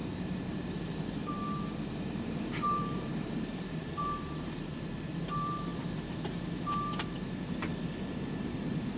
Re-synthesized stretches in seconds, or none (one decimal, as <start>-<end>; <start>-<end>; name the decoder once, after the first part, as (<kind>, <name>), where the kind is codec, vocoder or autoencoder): 0.0-7.7 (vocoder, BigVGAN v2); 8.4-9.0

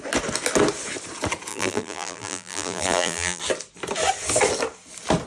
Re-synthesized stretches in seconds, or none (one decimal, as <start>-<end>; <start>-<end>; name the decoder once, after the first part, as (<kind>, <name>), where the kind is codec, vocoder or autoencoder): 1.5-3.4 (vocoder, BigVGAN v2)

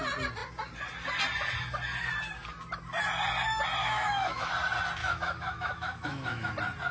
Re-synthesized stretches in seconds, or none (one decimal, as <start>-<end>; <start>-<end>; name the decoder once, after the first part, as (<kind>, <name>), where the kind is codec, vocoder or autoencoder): 3.8-4.5 (autoencoder, DAC-VAE); 5.0-6.5

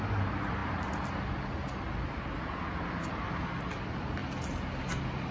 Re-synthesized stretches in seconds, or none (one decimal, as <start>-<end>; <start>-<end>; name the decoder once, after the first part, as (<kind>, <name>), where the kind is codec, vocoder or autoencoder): none

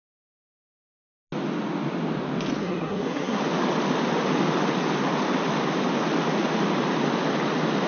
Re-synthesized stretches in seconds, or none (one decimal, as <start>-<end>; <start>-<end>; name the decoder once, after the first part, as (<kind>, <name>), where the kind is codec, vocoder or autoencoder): 2.6-3.4 (codec, SNAC)